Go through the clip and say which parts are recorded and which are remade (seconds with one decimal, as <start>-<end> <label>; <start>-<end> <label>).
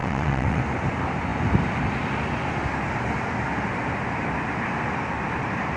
0.0-0.6 remade; 0.6-5.8 recorded